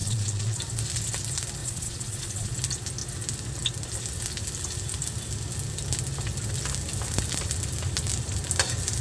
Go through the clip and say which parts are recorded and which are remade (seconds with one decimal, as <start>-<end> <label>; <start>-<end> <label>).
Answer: 0.0-0.6 remade; 0.6-1.6 recorded; 1.6-2.5 remade; 2.5-9.0 recorded